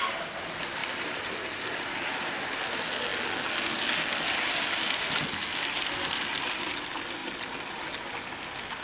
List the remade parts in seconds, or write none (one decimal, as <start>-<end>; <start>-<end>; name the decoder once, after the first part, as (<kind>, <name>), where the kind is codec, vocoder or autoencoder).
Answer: 0.8-2.3 (vocoder, BigVGAN v2); 7.2-8.0